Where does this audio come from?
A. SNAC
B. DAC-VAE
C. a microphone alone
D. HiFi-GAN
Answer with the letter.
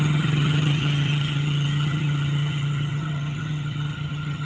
D